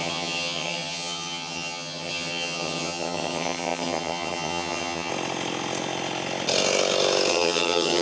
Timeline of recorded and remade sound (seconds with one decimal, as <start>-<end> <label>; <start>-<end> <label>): 0.0-5.1 remade; 5.1-7.3 recorded; 7.3-8.0 remade